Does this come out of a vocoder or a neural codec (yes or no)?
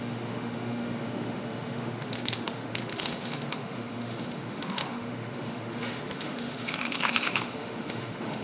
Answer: yes